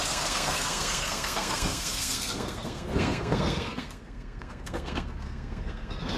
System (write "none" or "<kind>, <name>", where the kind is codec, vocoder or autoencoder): codec, SNAC